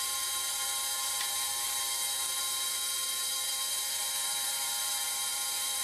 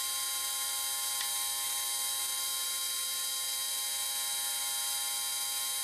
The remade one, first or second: first